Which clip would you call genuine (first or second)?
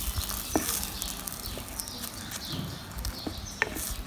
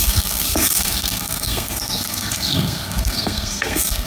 first